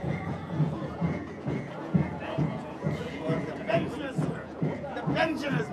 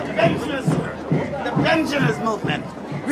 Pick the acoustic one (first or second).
second